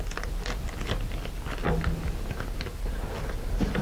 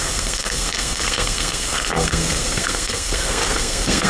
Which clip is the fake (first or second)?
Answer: second